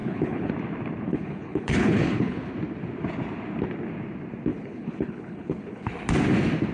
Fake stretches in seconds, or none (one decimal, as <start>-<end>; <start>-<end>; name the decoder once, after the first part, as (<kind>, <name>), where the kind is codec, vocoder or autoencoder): 0.0-0.5 (codec, HILCodec); 1.1-2.5; 4.5-5.9